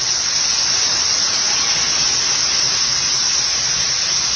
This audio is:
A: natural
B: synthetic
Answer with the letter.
A